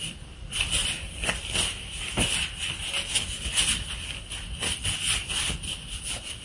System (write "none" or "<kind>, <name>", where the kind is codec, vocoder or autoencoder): none